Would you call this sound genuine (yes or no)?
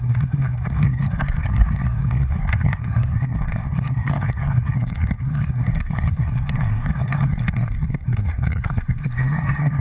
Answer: no